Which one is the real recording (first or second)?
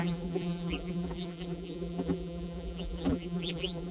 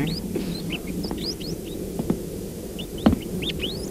second